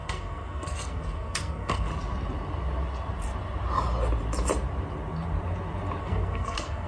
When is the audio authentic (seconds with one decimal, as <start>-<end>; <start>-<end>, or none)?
1.9-6.0

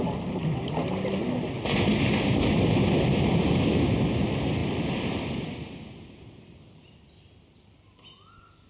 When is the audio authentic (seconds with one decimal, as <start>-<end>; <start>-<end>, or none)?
0.0-8.7

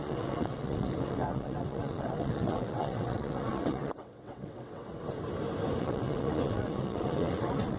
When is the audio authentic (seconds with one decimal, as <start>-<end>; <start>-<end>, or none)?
4.9-5.8